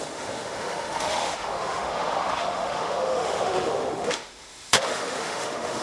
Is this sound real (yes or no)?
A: no